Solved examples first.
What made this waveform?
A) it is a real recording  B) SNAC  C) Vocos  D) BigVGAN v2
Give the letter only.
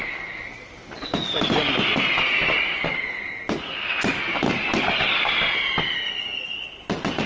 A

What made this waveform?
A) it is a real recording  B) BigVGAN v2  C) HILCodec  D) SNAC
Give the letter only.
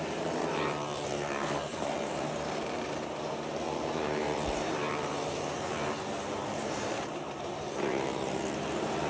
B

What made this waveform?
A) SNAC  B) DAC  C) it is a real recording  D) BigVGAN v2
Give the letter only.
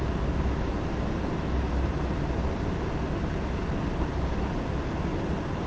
C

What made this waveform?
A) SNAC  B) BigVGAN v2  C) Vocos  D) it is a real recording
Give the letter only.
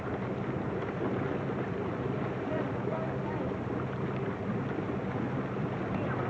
D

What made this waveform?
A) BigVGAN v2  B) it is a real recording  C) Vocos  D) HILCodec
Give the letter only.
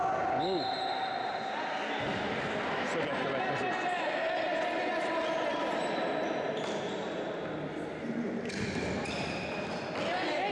B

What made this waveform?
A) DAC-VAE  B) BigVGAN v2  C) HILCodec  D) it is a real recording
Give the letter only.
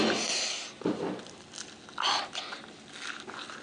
D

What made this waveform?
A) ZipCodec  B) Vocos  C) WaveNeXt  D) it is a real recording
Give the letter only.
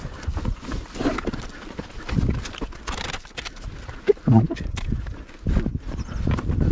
D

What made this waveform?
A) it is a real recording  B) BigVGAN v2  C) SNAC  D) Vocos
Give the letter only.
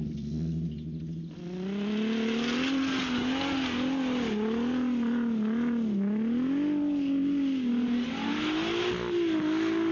A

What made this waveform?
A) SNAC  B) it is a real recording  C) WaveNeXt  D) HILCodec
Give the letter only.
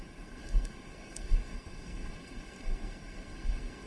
A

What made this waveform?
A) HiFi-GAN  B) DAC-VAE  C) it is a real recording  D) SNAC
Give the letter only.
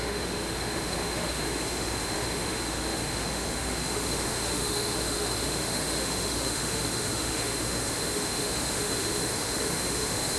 B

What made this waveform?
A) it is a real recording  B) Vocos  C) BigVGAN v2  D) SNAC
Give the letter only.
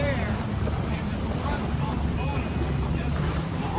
C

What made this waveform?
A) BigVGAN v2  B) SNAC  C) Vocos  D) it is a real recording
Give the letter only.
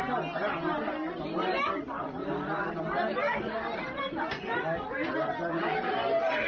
D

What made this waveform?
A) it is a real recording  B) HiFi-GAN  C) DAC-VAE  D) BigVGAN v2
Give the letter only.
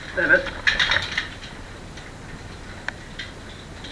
A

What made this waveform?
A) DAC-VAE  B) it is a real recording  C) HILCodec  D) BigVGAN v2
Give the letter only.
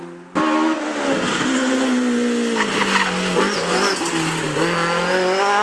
B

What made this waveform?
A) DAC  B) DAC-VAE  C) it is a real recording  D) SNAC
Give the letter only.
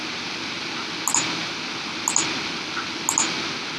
C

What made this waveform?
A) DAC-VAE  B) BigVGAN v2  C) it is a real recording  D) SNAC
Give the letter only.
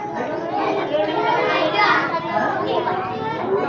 C